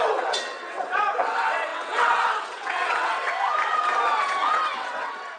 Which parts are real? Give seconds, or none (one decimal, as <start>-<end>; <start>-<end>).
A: 3.3-4.1